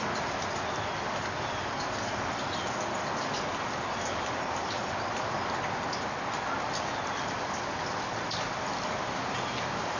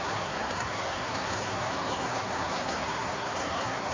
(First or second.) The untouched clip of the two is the first